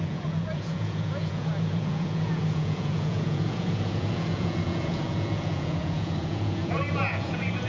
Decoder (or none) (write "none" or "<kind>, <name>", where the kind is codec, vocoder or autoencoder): vocoder, Vocos